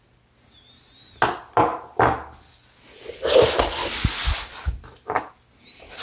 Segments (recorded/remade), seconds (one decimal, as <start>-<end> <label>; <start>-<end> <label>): 0.0-6.0 recorded